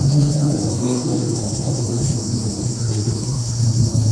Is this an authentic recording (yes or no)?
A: no